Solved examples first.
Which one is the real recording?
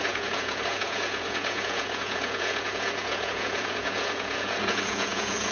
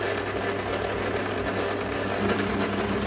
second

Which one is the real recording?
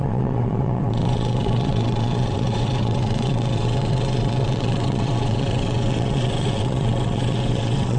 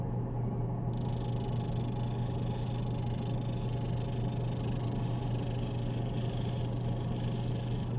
second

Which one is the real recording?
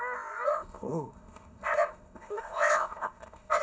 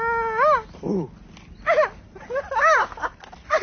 second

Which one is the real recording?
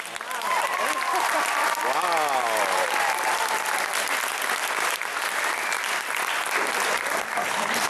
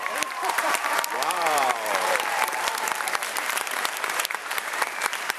first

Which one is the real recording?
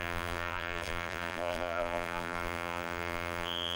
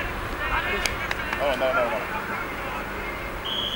second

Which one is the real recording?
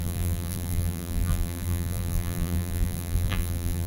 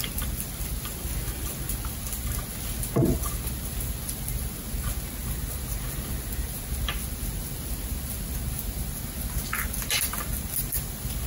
second